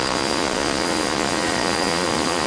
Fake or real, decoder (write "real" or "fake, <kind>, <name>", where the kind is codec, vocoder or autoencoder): fake, vocoder, Vocos